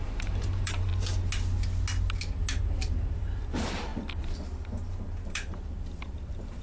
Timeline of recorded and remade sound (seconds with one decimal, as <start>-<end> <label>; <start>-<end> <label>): 0.0-0.9 remade; 0.9-2.6 recorded; 2.6-3.9 remade; 3.9-4.9 recorded; 4.9-6.6 remade